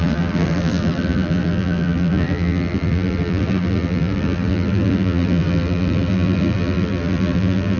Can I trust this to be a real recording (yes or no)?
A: no